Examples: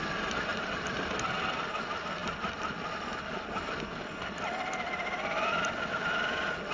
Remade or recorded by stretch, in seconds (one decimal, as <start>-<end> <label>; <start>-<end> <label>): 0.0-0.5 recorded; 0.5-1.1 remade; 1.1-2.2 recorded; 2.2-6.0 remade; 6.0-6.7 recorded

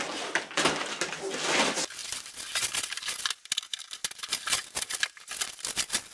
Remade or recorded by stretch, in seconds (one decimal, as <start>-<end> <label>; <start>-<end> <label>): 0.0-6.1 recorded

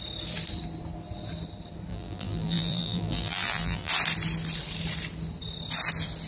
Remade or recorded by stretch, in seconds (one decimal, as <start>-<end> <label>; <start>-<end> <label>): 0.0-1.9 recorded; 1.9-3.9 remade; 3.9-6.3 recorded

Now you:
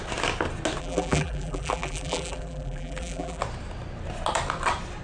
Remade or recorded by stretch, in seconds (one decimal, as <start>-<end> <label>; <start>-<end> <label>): 0.0-0.8 recorded; 0.8-3.4 remade; 3.4-5.0 recorded

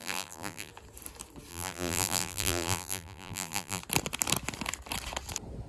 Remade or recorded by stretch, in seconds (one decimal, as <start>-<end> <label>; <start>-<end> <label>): 0.0-0.7 remade; 0.7-1.5 recorded; 1.5-3.8 remade; 3.8-5.7 recorded

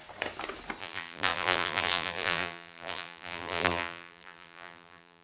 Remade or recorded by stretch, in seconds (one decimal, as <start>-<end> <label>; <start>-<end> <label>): 0.0-0.8 recorded; 0.8-5.2 remade

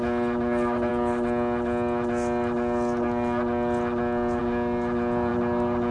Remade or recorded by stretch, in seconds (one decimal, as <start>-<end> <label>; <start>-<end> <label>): 0.0-5.9 recorded